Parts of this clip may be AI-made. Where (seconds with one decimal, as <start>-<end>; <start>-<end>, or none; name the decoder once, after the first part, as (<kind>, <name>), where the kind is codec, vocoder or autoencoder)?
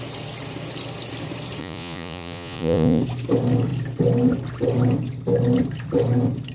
1.6-3.0 (vocoder, Vocos)